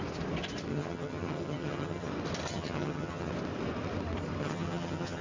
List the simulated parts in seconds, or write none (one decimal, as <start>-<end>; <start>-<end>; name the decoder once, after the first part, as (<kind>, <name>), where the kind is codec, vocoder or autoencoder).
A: 0.7-2.1 (vocoder, HiFi-GAN); 2.5-3.3; 4.4-5.2